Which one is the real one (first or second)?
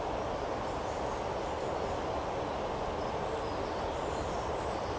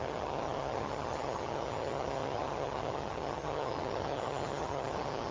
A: first